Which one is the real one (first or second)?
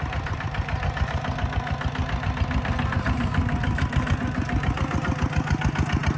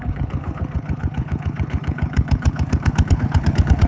first